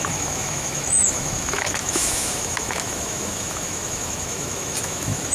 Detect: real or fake fake